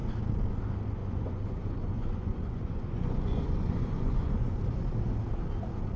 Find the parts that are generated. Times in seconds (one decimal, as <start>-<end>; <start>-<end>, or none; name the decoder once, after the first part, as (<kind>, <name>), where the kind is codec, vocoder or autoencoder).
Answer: 1.0-4.6 (vocoder, Vocos)